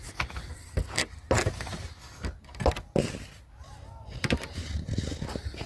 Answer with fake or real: real